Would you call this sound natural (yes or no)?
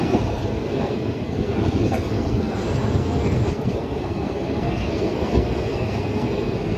no